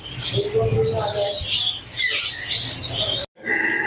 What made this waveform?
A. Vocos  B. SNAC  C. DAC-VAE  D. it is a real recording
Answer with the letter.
D